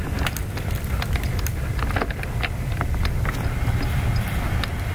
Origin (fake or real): real